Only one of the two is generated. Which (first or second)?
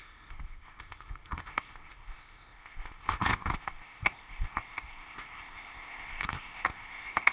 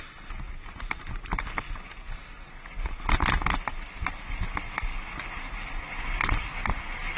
first